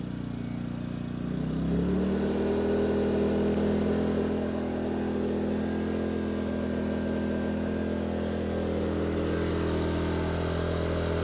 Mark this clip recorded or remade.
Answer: recorded